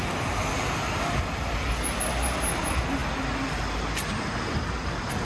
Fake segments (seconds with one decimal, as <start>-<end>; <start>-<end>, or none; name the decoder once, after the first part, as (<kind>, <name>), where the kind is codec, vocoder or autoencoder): none